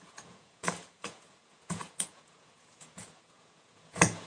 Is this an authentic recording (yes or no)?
no